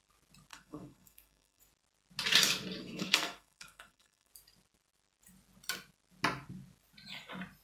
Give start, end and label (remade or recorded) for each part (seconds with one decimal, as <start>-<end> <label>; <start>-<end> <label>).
0.0-0.5 recorded; 0.5-1.6 remade; 1.6-2.8 recorded; 2.8-4.3 remade; 4.3-7.6 recorded